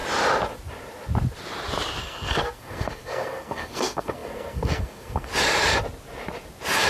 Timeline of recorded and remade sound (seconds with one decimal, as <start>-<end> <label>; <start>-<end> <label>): 0.0-2.0 recorded; 2.0-5.3 remade; 5.3-6.9 recorded